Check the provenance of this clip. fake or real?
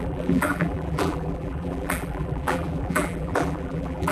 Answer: fake